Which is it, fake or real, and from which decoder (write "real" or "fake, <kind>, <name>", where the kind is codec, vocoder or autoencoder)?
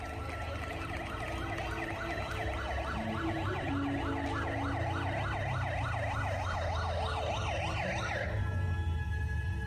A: real